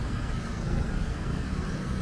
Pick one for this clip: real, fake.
fake